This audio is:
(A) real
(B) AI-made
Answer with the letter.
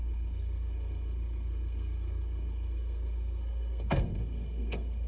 B